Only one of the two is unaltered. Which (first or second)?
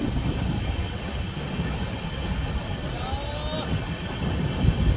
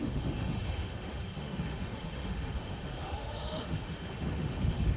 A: first